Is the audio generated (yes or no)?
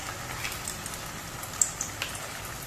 no